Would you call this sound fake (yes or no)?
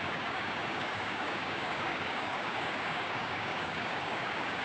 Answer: yes